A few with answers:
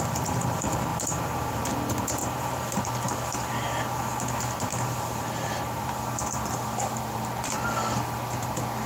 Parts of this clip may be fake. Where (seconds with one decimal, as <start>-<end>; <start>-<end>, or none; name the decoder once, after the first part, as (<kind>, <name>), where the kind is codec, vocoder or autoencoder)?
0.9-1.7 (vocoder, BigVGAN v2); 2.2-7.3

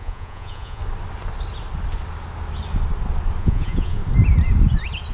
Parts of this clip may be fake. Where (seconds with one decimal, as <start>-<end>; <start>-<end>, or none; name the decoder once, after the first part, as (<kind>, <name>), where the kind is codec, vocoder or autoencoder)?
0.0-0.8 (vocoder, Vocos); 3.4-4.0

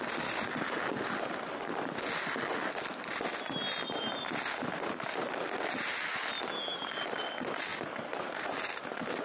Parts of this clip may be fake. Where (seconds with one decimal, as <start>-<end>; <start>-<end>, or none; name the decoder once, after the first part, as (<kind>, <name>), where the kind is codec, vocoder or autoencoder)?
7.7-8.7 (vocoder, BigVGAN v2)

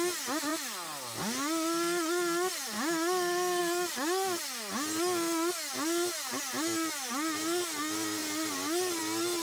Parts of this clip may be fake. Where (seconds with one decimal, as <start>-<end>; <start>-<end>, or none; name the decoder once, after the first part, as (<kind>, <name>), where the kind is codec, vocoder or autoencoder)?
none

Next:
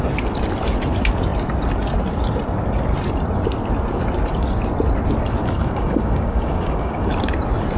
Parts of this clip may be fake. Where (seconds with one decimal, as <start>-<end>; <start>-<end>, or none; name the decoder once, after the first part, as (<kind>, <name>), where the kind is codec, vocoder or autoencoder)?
5.4-7.1 (codec, DAC)